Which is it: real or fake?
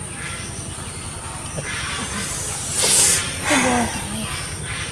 real